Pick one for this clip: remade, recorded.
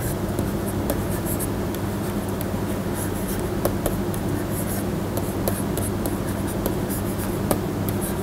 recorded